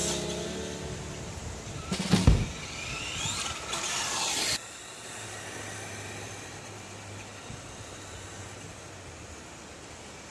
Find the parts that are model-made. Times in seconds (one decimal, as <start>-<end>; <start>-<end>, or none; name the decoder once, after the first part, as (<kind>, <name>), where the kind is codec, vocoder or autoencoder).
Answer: none